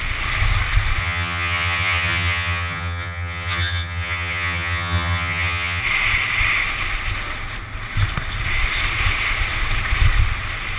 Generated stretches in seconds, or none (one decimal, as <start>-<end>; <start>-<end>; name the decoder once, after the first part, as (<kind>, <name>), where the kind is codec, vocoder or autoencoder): 1.0-5.8 (vocoder, HiFi-GAN)